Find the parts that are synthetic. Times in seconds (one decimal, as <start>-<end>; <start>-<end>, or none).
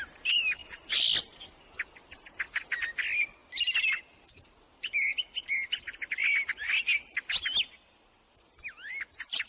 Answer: none